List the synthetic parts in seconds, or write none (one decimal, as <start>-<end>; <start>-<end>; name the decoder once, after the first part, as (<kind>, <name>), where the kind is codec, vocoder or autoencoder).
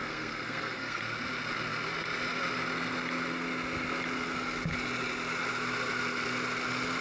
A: 0.0-1.0 (codec, SNAC)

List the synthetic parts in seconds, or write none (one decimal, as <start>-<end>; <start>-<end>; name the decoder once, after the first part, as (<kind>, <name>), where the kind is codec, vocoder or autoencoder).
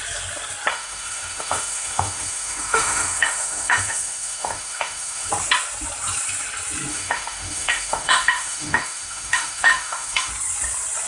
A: 0.7-5.3 (autoencoder, DAC-VAE); 6.9-10.3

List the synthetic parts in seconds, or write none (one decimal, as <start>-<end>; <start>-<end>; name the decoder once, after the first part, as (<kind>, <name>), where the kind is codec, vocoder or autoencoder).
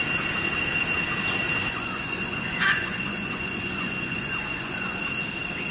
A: 1.6-5.0 (vocoder, Vocos)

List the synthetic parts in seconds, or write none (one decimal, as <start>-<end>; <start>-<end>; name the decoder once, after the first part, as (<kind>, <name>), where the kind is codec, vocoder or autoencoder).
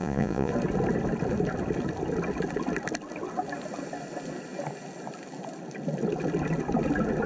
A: 0.0-0.5 (vocoder, Vocos)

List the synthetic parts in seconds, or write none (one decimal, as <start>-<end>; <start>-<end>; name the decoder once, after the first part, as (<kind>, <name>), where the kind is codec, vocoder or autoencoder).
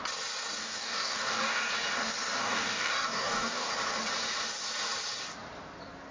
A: 0.6-1.7 (codec, DAC); 2.4-3.7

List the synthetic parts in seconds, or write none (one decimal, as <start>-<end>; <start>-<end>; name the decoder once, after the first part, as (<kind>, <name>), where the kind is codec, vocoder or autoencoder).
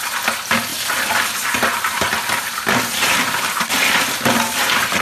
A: 0.7-3.7 (vocoder, BigVGAN v2)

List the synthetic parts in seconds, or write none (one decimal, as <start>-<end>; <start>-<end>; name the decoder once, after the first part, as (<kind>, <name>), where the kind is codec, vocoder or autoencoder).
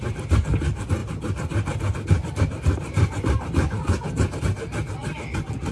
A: none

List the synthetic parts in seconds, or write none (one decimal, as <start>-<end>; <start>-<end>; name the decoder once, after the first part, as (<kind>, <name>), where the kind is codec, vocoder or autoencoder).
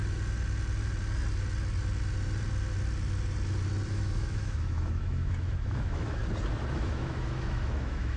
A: 3.9-6.2 (autoencoder, DAC-VAE); 6.7-8.2